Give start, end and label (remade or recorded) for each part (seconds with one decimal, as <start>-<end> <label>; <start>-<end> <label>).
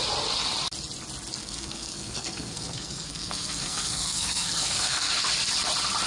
0.0-1.4 recorded; 1.4-5.1 remade; 5.1-6.1 recorded